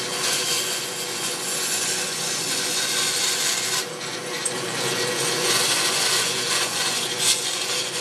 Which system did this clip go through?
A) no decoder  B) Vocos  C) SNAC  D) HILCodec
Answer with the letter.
B